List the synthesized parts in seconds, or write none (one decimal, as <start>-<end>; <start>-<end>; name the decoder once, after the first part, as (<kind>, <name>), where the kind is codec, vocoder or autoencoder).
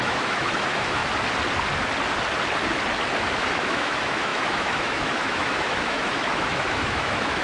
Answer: 0.0-1.0 (autoencoder, DAC-VAE); 3.4-7.4